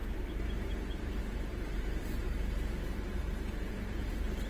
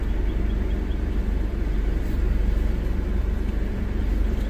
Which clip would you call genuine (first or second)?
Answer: second